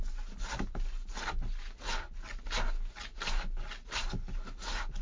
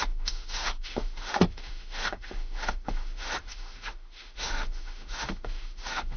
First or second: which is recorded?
first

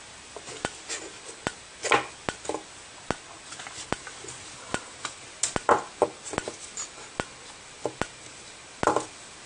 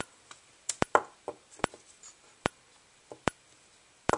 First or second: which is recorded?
first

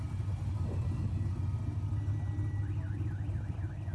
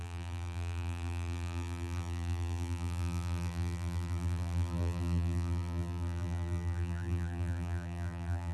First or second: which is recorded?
first